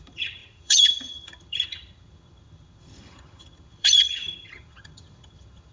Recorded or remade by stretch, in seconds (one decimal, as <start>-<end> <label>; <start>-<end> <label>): 0.0-5.7 remade